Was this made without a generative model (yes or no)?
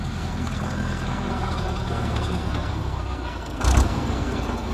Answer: no